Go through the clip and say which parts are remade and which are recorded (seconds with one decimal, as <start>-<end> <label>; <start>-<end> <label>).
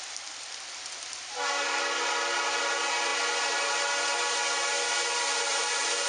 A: 0.0-6.1 recorded